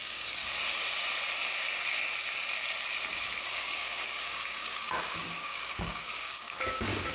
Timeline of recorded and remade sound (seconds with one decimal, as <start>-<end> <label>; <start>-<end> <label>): 0.0-0.4 remade; 0.4-3.4 recorded; 3.4-7.1 remade